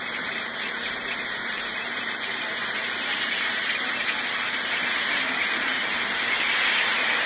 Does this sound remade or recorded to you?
remade